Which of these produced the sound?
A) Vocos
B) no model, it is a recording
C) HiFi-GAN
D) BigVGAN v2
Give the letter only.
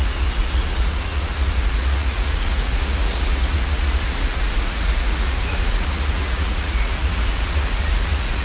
A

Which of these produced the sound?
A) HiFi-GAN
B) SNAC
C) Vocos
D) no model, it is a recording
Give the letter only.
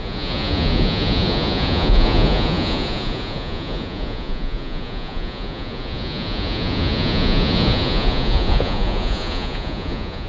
C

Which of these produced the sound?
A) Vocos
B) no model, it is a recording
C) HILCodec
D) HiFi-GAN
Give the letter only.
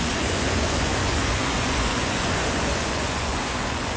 A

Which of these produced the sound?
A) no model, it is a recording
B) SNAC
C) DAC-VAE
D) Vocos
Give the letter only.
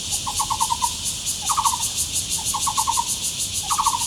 A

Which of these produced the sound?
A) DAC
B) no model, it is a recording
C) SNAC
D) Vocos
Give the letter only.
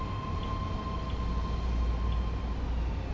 B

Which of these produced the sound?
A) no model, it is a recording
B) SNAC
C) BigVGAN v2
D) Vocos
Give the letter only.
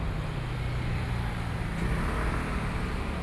A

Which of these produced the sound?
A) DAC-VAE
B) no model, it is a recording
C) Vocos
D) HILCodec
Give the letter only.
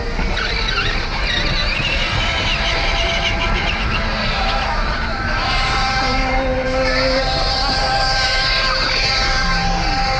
B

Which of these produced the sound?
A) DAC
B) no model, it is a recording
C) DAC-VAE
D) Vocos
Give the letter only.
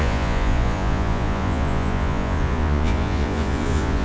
D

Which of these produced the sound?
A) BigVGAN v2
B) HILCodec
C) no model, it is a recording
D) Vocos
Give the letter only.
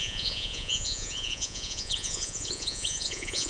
D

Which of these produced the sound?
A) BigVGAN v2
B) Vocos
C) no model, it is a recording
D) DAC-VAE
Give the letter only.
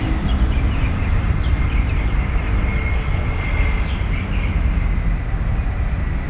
C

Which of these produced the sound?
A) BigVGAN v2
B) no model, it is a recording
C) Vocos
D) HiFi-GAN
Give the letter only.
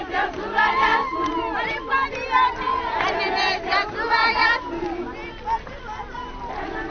B